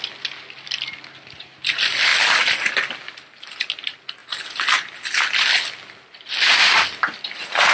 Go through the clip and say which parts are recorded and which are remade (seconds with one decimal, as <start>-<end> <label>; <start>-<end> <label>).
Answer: 0.0-7.7 recorded